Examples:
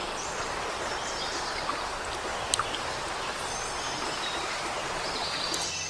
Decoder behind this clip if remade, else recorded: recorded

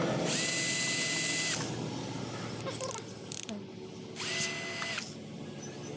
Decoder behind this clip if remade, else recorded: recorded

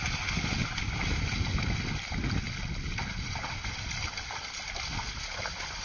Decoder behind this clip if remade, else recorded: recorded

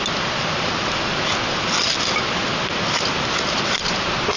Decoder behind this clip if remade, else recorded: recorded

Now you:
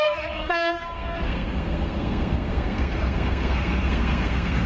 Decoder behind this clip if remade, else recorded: remade, codec, SNAC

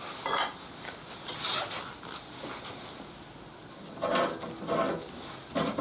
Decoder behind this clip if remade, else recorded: recorded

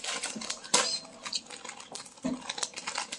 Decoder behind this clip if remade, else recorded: recorded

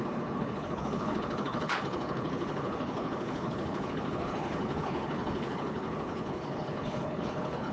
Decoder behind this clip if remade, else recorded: remade, codec, HILCodec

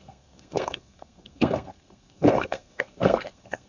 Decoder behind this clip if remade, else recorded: remade, codec, SNAC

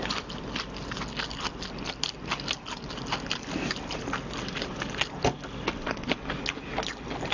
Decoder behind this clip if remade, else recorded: recorded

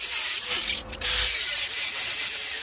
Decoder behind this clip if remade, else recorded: recorded